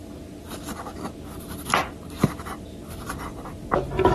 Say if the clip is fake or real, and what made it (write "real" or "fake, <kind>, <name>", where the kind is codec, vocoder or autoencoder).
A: real